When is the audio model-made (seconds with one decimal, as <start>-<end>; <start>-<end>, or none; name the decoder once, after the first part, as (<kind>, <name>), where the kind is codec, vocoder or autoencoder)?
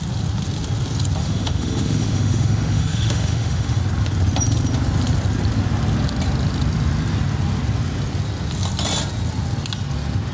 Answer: 1.2-3.8 (autoencoder, DAC-VAE)